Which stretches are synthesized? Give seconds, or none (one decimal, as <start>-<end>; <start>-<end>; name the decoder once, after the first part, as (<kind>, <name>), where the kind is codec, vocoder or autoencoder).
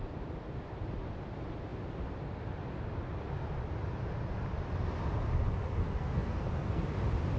5.8-6.8 (codec, SNAC)